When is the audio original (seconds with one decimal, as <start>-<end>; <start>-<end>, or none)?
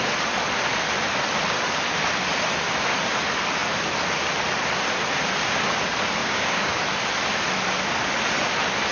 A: 0.0-6.2; 6.8-8.9